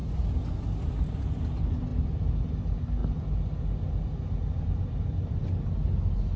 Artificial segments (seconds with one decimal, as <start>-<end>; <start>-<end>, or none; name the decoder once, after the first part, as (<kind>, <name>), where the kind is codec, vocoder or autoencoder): none